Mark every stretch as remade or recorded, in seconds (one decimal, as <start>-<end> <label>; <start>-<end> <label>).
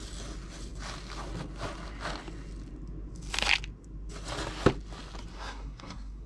0.0-5.3 recorded; 5.3-6.3 remade